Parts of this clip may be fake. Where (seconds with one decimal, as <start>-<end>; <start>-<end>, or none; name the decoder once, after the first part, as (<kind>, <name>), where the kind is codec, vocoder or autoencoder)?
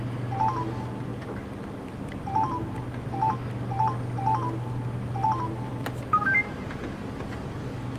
none